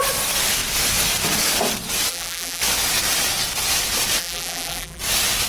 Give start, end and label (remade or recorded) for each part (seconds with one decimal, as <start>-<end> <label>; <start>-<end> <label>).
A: 0.0-2.1 recorded; 2.1-2.6 remade; 2.6-4.2 recorded; 4.2-5.0 remade; 5.0-5.5 recorded